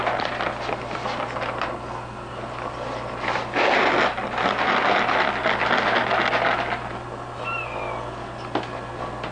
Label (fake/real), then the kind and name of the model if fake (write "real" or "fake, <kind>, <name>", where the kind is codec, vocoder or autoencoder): real